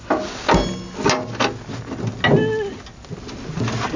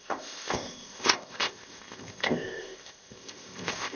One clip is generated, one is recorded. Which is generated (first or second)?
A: second